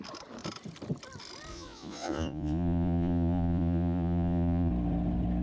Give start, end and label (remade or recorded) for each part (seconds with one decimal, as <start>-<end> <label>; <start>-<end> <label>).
0.0-1.5 recorded; 1.5-4.7 remade; 4.7-5.4 recorded